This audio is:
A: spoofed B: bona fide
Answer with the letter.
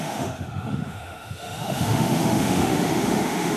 A